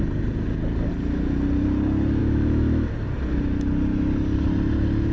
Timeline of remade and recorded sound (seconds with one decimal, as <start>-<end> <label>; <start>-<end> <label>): 0.0-2.2 recorded; 2.2-2.9 remade; 2.9-5.1 recorded